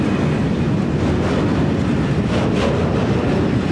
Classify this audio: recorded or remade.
recorded